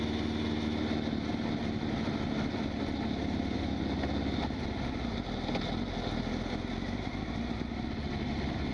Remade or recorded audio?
recorded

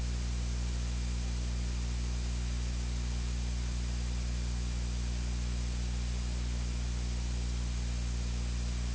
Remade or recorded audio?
recorded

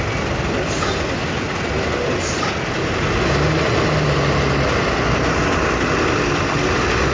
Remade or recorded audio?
recorded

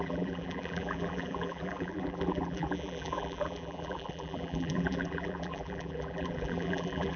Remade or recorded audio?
remade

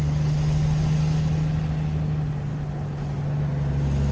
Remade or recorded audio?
recorded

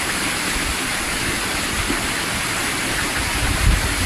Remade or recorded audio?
recorded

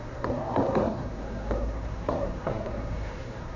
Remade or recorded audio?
remade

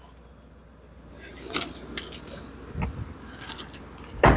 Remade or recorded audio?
recorded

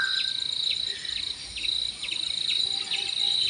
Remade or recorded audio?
recorded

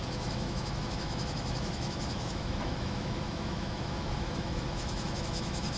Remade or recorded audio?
remade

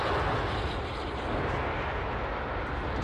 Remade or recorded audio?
recorded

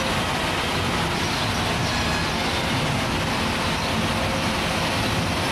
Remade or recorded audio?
recorded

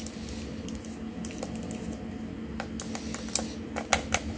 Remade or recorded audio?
recorded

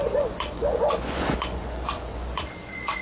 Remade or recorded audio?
remade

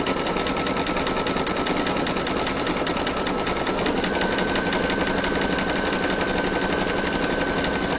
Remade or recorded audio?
recorded